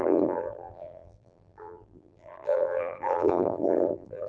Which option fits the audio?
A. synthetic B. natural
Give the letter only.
A